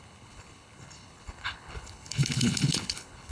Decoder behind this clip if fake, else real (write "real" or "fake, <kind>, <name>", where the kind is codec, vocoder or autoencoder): fake, codec, HILCodec